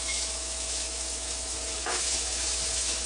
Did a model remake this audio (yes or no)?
yes